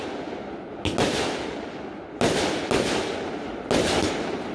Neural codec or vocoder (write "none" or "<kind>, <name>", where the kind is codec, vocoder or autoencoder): none